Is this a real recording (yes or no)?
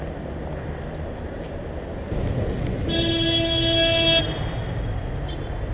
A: yes